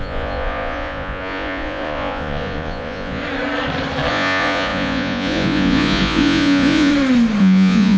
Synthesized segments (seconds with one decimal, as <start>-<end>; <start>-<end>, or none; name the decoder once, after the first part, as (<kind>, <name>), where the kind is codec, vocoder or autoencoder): 0.0-3.2 (vocoder, Vocos); 4.1-6.9; 7.4-8.0